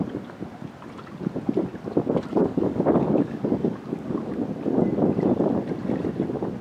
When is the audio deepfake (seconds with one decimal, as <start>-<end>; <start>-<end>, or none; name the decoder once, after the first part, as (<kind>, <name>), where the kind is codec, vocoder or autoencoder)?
2.3-4.3 (codec, DAC)